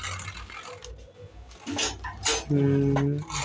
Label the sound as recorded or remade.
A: recorded